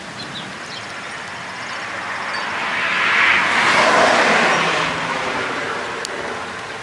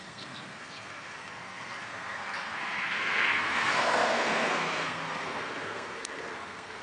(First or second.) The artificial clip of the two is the second